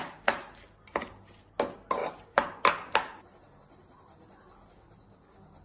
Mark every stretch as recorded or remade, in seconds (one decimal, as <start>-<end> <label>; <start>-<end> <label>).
0.0-2.0 recorded; 2.0-2.7 remade; 2.7-5.6 recorded